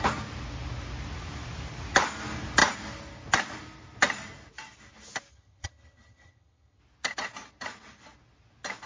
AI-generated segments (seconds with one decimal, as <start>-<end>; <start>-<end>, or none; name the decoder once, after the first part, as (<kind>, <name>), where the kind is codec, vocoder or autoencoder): 5.3-6.8 (vocoder, HiFi-GAN)